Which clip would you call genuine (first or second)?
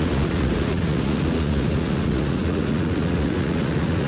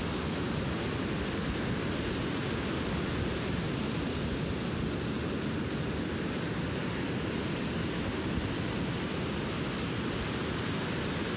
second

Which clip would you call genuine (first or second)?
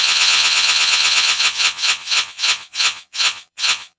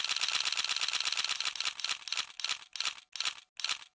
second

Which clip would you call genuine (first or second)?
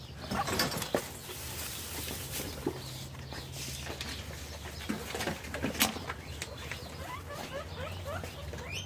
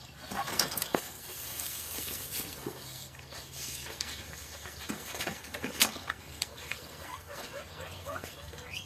first